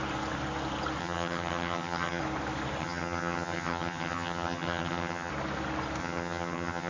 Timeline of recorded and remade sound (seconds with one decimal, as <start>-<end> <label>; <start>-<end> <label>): 0.0-1.0 recorded; 1.0-2.2 remade; 2.2-2.8 recorded; 2.8-5.3 remade; 5.3-6.0 recorded; 6.0-6.9 remade